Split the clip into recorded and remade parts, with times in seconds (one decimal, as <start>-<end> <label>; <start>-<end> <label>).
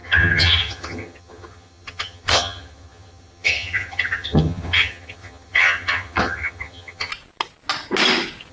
0.0-7.1 remade; 7.1-8.5 recorded